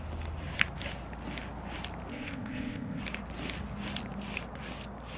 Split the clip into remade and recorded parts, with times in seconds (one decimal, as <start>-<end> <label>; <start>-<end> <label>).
0.0-2.1 recorded; 2.1-3.0 remade; 3.0-5.2 recorded

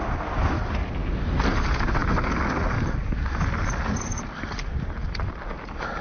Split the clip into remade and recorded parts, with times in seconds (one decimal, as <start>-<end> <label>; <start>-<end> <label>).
0.0-6.0 recorded